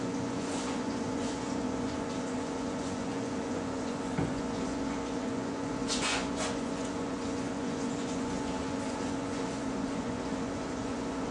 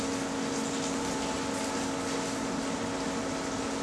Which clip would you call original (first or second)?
second